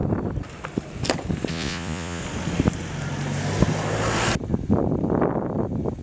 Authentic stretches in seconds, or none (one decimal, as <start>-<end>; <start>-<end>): 0.0-1.5; 2.2-6.0